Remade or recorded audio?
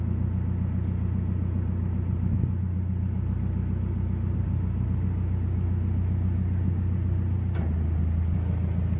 recorded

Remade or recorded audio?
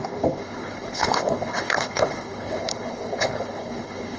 remade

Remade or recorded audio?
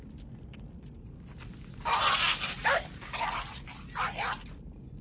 recorded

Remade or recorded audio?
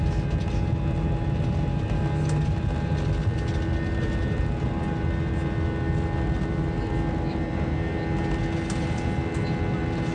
recorded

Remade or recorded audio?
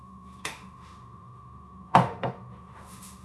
remade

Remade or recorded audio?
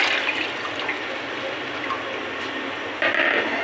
recorded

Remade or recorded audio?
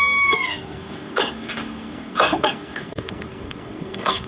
remade